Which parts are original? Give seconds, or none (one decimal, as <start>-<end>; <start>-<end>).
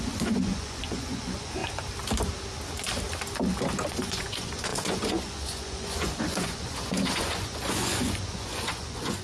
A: 1.6-3.9